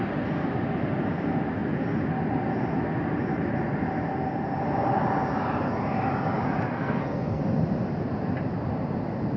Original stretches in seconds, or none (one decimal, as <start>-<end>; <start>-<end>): 0.0-6.7; 7.4-9.4